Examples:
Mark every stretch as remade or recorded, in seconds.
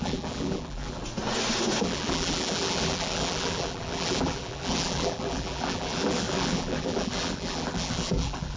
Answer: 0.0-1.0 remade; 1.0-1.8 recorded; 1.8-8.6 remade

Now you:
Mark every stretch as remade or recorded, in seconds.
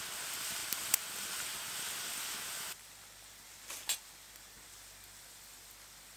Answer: 0.0-6.2 recorded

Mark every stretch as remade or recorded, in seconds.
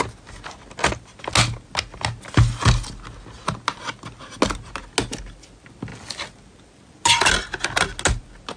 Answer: 0.0-8.6 recorded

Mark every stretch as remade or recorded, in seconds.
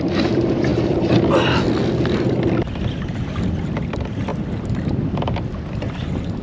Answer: 0.0-4.3 remade; 4.3-5.2 recorded; 5.2-6.4 remade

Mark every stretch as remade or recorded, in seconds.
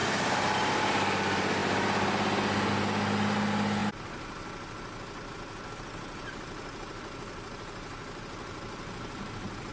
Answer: 0.0-0.8 remade; 0.8-9.7 recorded